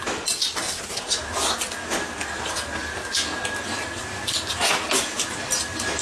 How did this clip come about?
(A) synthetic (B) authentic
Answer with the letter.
B